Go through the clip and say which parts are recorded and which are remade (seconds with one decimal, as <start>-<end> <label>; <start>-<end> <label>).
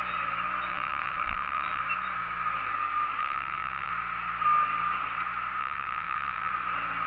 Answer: 0.0-0.7 recorded; 0.7-1.8 remade; 1.8-3.2 recorded; 3.2-3.9 remade; 3.9-5.6 recorded; 5.6-6.5 remade; 6.5-7.1 recorded